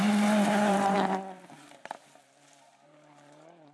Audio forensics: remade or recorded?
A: remade